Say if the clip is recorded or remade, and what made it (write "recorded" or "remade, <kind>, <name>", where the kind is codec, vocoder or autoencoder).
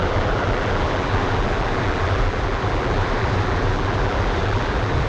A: remade, vocoder, BigVGAN v2